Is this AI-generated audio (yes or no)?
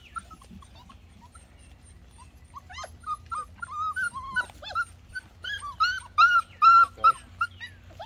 no